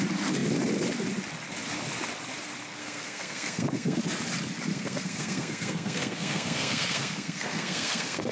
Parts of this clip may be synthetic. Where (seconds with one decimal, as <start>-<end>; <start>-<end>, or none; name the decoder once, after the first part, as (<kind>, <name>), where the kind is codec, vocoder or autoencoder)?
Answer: 2.8-4.0 (codec, SNAC); 4.7-8.3